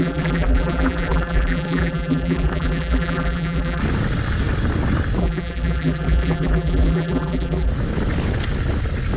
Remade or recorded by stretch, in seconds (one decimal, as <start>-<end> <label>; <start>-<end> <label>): 0.0-3.8 remade; 3.8-5.2 recorded; 5.2-7.7 remade; 7.7-9.2 recorded